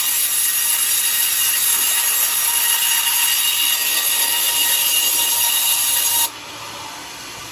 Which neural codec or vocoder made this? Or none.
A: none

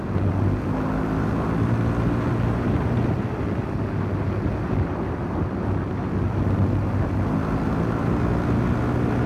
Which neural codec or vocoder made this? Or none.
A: none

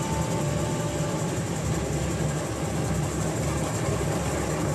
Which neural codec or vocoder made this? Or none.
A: none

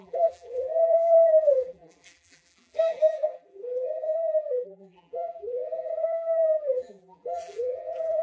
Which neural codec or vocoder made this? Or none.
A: vocoder, BigVGAN v2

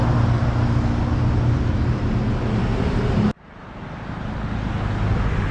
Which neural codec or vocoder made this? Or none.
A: none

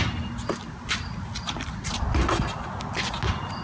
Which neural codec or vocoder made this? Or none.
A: none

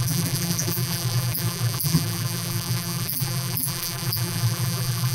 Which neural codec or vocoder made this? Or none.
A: vocoder, BigVGAN v2